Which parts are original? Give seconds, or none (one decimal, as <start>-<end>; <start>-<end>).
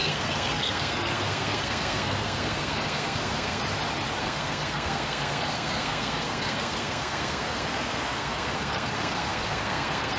3.6-4.2